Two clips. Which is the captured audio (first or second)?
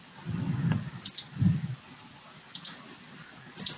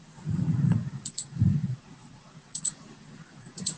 first